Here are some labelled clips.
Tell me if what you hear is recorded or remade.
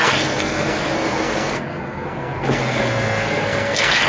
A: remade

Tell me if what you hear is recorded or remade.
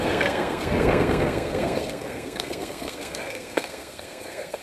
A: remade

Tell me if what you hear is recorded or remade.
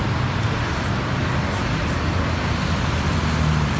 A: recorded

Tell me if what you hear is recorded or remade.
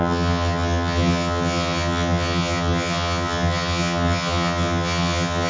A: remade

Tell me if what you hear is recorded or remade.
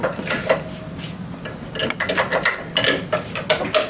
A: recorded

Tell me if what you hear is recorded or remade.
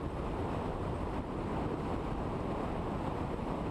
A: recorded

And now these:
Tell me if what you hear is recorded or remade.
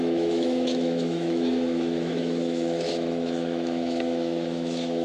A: remade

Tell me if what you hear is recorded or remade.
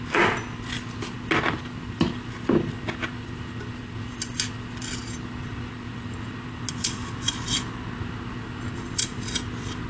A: recorded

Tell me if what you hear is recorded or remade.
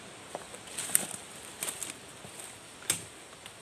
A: recorded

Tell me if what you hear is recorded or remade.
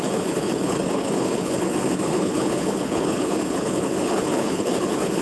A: remade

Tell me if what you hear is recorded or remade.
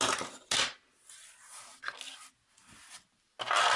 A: recorded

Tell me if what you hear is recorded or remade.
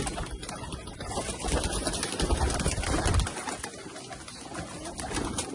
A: recorded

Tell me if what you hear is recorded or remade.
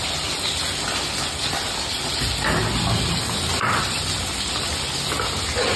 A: recorded